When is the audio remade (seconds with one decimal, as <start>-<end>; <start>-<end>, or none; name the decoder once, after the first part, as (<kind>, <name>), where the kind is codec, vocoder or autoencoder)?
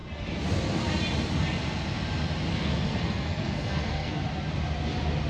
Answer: 2.5-4.2 (codec, SNAC)